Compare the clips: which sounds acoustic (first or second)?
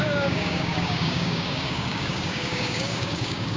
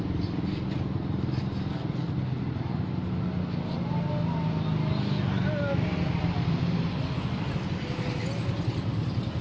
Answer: second